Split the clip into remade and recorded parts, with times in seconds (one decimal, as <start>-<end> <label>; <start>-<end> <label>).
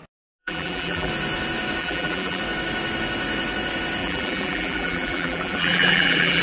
0.0-0.4 recorded; 0.4-1.1 remade; 1.1-1.8 recorded; 1.8-2.4 remade; 2.4-4.0 recorded; 4.0-6.4 remade